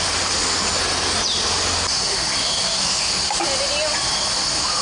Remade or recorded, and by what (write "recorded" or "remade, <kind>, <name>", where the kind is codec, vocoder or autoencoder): recorded